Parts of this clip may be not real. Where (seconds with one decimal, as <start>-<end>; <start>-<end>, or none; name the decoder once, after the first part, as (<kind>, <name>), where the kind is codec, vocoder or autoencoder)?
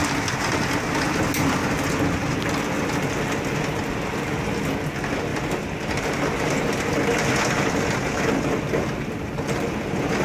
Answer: none